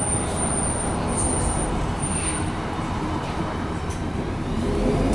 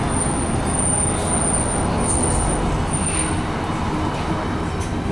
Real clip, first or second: second